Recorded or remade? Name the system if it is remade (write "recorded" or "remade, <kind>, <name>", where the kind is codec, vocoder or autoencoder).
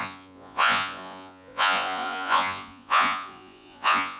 remade, vocoder, Vocos